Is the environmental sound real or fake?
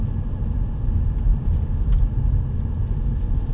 real